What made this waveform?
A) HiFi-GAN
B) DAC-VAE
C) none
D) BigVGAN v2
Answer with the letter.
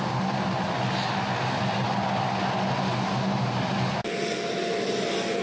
C